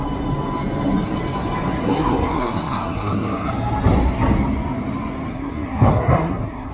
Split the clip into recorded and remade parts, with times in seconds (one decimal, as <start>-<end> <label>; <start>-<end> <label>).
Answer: 0.0-1.8 recorded; 1.8-3.5 remade; 3.5-5.3 recorded; 5.3-6.7 remade